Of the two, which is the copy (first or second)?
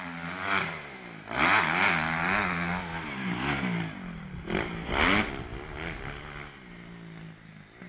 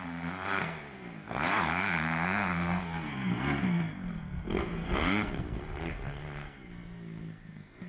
second